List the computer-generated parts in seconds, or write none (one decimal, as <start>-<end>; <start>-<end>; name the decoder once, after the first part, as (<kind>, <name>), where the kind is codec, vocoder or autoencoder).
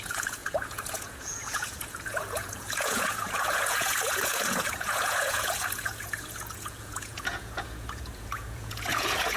0.0-9.4 (vocoder, Vocos)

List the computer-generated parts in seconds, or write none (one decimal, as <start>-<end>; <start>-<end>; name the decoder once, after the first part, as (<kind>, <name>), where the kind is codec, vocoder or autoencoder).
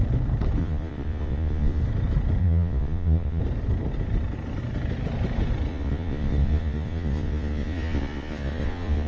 0.6-1.8 (vocoder, Vocos); 2.4-3.4; 5.7-9.1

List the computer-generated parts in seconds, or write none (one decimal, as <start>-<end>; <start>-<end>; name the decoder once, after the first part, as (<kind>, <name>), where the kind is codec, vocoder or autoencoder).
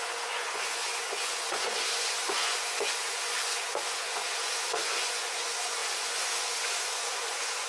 0.0-7.7 (vocoder, Vocos)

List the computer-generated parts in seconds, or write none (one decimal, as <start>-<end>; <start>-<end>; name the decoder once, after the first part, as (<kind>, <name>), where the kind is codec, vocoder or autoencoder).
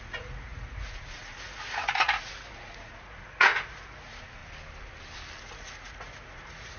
0.0-4.4 (vocoder, Vocos); 5.4-6.8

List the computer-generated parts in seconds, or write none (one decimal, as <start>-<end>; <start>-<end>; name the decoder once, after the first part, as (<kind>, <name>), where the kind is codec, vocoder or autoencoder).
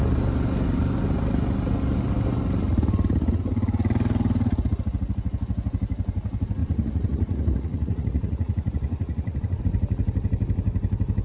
6.6-9.6 (vocoder, Vocos)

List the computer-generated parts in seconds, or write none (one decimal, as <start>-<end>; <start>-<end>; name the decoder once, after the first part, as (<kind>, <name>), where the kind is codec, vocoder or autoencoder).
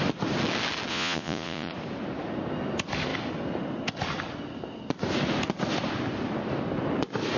0.9-1.7 (vocoder, Vocos)